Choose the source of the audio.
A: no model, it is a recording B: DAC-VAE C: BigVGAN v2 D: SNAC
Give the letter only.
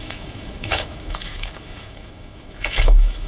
B